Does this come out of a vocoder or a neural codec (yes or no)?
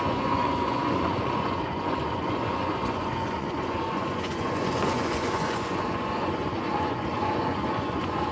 yes